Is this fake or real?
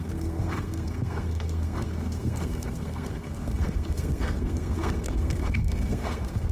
fake